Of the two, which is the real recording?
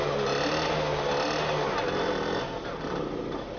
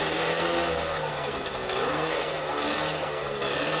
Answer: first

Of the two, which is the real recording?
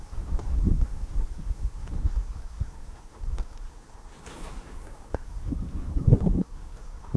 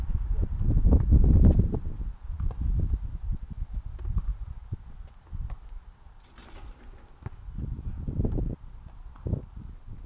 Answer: second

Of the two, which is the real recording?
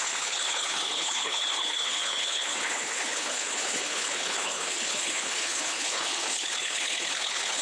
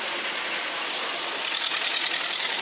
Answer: second